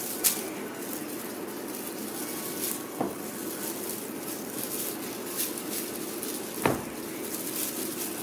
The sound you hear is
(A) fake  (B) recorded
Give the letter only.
B